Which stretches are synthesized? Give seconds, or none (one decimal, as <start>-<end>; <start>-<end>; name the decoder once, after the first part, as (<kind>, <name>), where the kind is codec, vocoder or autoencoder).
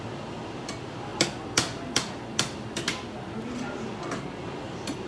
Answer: none